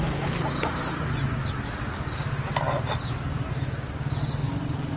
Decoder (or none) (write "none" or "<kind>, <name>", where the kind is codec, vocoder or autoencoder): none